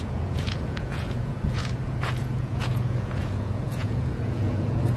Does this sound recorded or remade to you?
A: remade